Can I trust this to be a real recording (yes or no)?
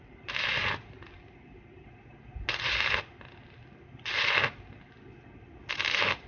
yes